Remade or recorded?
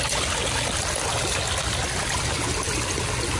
recorded